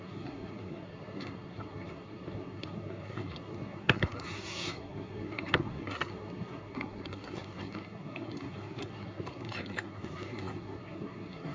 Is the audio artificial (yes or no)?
yes